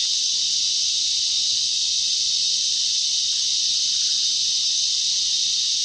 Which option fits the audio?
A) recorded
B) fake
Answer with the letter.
A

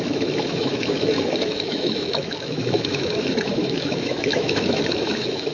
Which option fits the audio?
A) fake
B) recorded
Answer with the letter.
A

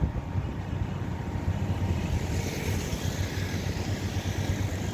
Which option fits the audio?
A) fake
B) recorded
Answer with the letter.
B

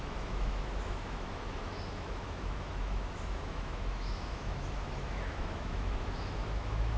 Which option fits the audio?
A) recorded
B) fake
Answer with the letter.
B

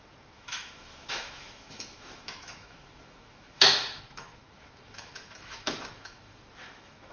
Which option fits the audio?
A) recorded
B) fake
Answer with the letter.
B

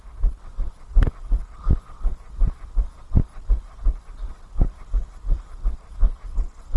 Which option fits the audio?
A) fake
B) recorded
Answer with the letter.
B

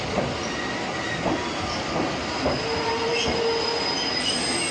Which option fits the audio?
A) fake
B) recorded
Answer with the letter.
B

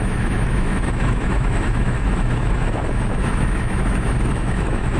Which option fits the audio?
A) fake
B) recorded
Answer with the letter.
A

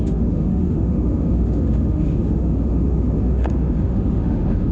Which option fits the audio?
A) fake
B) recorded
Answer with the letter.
A